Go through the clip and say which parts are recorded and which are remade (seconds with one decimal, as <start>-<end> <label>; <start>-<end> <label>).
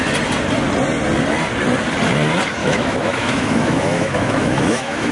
0.0-2.6 recorded; 2.6-5.1 remade